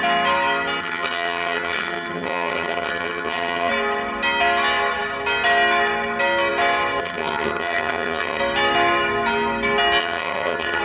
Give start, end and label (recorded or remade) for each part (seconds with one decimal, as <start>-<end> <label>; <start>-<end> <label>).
0.0-0.8 recorded; 0.8-3.7 remade; 3.7-7.0 recorded; 7.0-8.4 remade; 8.4-10.0 recorded; 10.0-10.8 remade